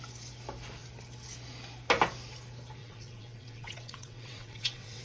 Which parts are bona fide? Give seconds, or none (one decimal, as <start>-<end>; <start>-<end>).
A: 0.0-2.8